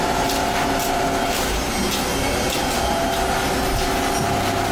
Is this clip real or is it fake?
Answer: real